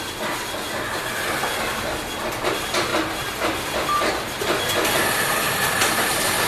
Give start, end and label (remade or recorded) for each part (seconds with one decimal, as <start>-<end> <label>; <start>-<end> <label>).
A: 0.0-6.5 recorded